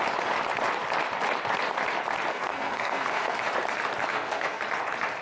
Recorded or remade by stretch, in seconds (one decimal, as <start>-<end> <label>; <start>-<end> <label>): 0.0-2.3 recorded; 2.3-3.4 remade; 3.4-4.1 recorded; 4.1-4.6 remade; 4.6-5.2 recorded

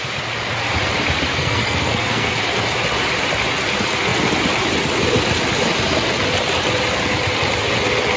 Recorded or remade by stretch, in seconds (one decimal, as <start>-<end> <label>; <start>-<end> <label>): 0.0-1.3 recorded; 1.3-2.4 remade; 2.4-8.2 recorded

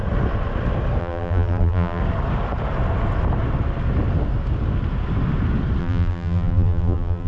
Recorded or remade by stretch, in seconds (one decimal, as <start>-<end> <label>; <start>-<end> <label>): 0.0-1.0 recorded; 1.0-2.0 remade; 2.0-5.8 recorded; 5.8-7.3 remade

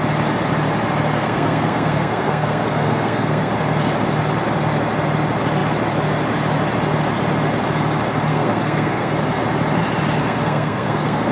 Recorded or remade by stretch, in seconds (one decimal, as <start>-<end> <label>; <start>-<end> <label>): 0.0-1.2 recorded; 1.2-3.5 remade; 3.5-8.3 recorded; 8.3-9.1 remade; 9.1-10.2 recorded; 10.2-11.3 remade

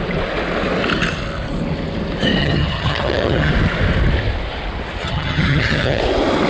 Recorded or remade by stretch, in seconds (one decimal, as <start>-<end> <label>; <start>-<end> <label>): 0.0-2.4 recorded; 2.4-3.5 remade; 3.5-5.0 recorded; 5.0-6.0 remade; 6.0-6.5 recorded

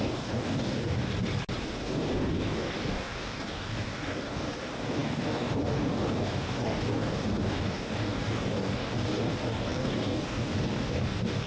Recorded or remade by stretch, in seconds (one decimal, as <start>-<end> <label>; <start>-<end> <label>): 0.0-1.1 remade; 1.1-1.6 recorded; 1.6-11.5 remade